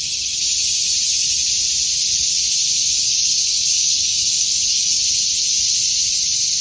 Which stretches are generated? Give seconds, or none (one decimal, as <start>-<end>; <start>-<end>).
2.8-5.0